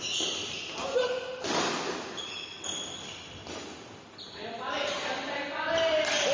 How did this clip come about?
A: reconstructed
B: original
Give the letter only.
B